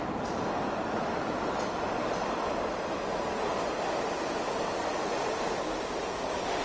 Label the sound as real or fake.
real